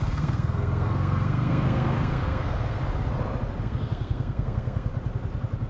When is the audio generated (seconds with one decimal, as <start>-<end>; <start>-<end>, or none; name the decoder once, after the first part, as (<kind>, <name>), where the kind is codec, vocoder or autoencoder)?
0.0-2.8 (codec, SNAC); 3.6-4.9